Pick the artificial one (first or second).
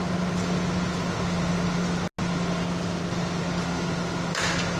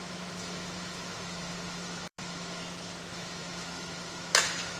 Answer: second